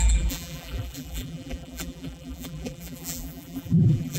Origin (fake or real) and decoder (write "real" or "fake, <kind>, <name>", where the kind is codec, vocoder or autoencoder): fake, vocoder, BigVGAN v2